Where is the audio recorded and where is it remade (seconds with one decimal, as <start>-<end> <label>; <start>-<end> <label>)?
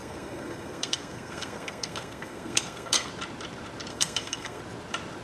0.0-3.1 remade; 3.1-3.9 recorded; 3.9-4.6 remade; 4.6-5.2 recorded